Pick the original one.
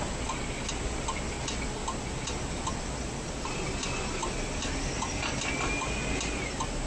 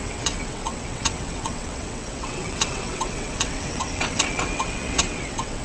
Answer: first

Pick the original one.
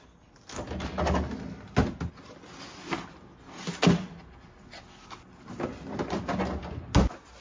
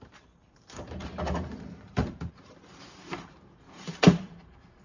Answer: first